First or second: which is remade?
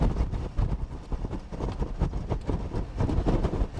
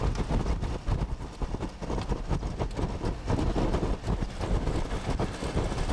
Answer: first